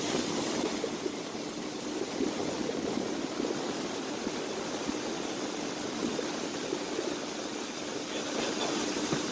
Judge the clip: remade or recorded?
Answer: recorded